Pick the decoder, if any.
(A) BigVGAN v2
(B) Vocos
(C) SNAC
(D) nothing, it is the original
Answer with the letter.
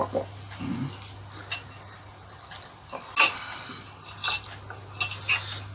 D